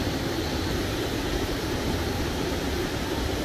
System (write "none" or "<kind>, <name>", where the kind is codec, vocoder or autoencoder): vocoder, BigVGAN v2